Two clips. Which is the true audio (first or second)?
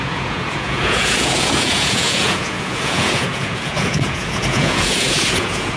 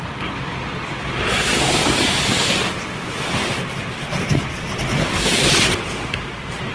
second